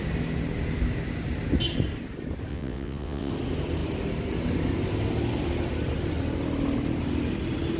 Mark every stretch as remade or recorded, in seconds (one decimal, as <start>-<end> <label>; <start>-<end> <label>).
0.0-2.5 recorded; 2.5-3.3 remade; 3.3-7.8 recorded